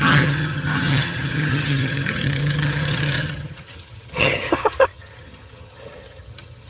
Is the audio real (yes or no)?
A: no